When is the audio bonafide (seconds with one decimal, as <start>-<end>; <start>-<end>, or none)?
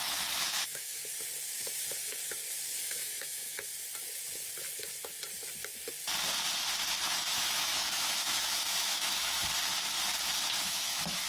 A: 1.0-2.8; 3.7-7.0; 9.4-10.6